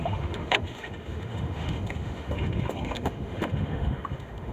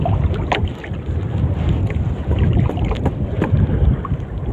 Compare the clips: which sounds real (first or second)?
second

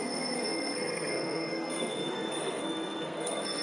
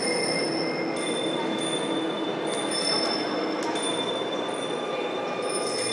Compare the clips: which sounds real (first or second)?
second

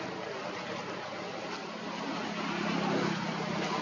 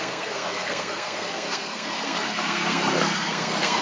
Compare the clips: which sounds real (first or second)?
first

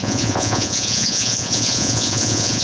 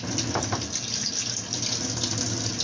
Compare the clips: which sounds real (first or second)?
second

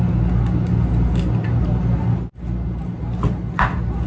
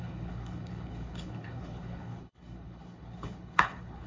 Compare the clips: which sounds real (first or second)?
first